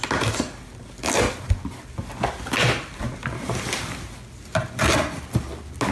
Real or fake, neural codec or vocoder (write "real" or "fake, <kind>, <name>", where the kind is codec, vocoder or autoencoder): real